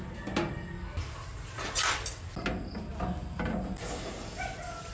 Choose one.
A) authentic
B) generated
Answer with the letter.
A